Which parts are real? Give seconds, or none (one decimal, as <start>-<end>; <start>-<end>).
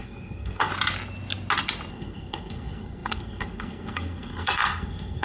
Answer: 0.7-1.9